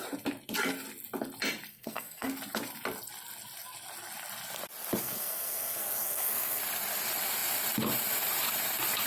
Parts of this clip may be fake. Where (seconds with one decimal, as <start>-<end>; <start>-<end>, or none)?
1.7-2.3; 5.0-6.6